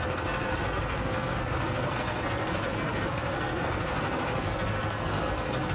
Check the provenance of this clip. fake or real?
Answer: fake